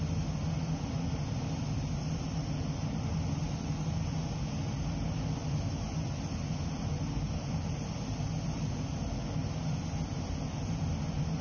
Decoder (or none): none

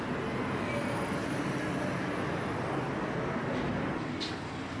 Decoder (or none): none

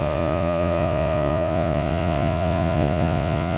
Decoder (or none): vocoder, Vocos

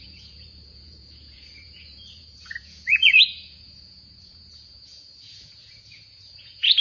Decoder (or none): vocoder, Vocos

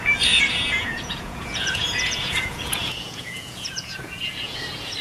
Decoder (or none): vocoder, Vocos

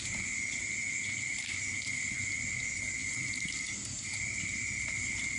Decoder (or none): none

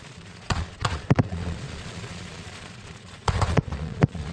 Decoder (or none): vocoder, Vocos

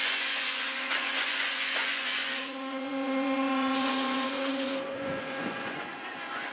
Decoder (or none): vocoder, Vocos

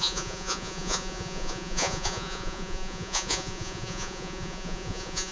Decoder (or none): vocoder, Vocos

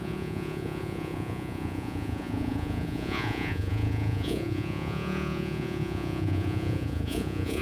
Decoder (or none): vocoder, Vocos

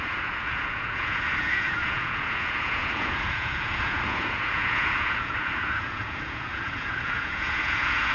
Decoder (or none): vocoder, Vocos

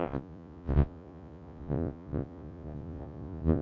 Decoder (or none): vocoder, Vocos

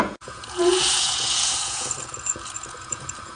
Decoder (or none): vocoder, Vocos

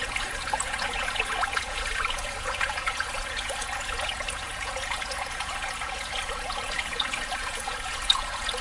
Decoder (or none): vocoder, Vocos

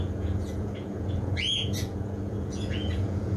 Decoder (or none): vocoder, Vocos